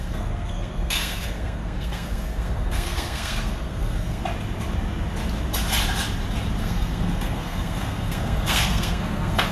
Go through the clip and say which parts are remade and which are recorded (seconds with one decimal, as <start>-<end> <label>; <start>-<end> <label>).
0.0-4.2 remade; 4.2-6.6 recorded; 6.6-9.5 remade